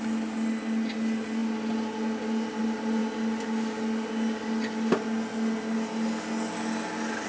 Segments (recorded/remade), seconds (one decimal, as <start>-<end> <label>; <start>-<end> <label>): 0.0-7.3 recorded